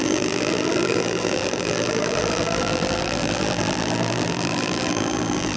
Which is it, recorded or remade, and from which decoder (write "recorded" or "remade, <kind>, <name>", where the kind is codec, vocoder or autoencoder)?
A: remade, vocoder, BigVGAN v2